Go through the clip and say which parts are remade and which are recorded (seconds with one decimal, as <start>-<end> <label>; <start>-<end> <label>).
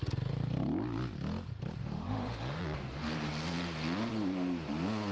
0.0-1.8 recorded; 1.8-2.6 remade; 2.6-5.1 recorded